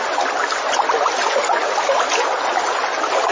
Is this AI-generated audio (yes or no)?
no